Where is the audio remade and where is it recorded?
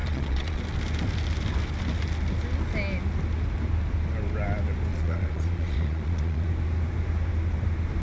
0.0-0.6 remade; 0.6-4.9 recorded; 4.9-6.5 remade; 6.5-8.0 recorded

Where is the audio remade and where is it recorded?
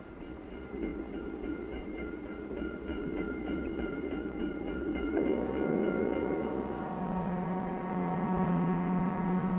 0.0-9.6 remade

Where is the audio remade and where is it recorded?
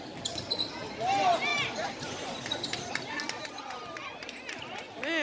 0.0-1.5 recorded; 1.5-2.9 remade; 2.9-5.2 recorded